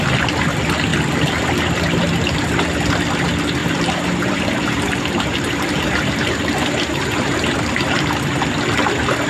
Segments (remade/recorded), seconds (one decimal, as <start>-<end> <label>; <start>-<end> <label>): 0.0-3.6 recorded; 3.6-8.1 remade; 8.1-9.3 recorded